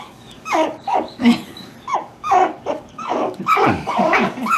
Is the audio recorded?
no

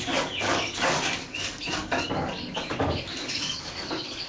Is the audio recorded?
no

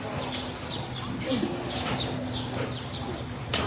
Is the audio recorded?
yes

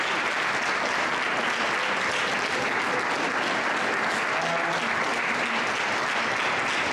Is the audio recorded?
yes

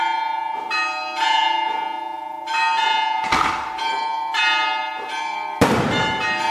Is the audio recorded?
yes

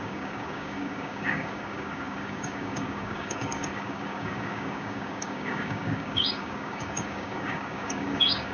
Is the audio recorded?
no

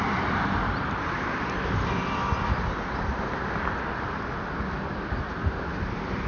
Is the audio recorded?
yes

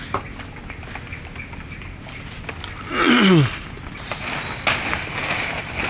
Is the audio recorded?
yes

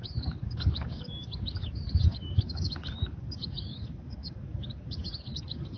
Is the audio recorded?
no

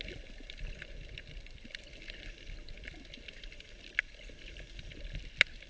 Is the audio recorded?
yes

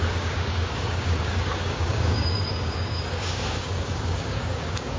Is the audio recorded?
no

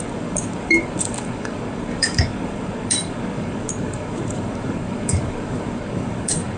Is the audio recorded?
no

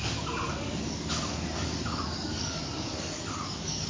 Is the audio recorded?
no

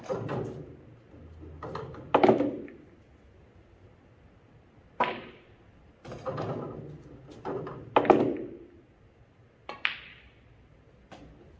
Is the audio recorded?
yes